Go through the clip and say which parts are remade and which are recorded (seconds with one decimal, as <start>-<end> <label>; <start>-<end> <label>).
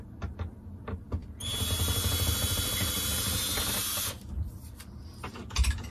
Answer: 0.0-5.9 recorded